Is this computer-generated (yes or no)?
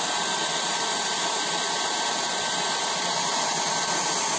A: no